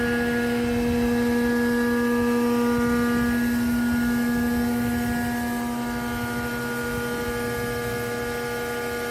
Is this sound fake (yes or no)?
no